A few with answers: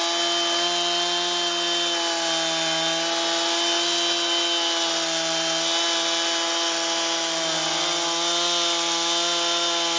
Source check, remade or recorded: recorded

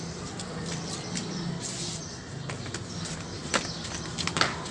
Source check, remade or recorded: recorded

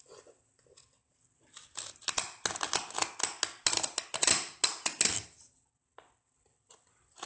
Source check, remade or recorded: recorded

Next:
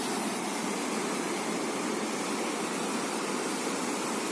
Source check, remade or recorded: recorded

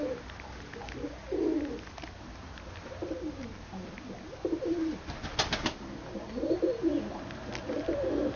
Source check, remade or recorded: recorded